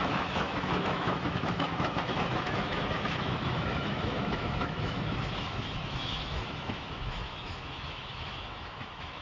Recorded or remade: remade